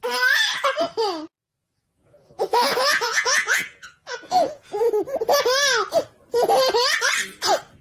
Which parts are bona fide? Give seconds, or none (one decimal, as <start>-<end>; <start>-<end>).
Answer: 0.0-1.4; 4.8-7.8